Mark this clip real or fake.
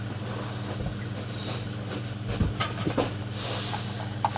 real